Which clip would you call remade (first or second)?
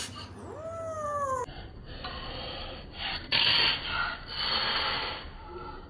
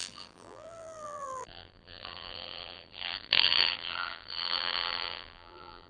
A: second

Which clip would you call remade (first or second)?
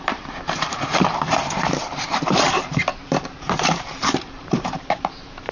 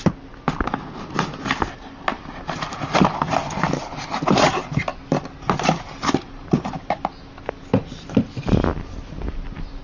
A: first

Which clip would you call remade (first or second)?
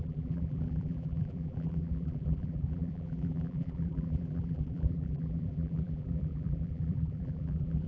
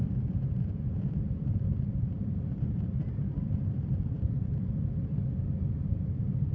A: first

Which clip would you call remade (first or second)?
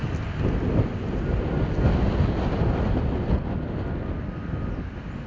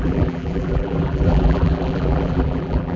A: second